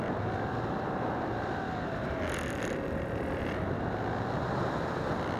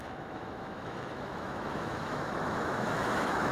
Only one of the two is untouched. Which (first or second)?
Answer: first